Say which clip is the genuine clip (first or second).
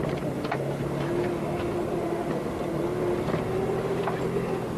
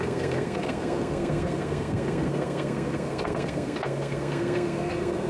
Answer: first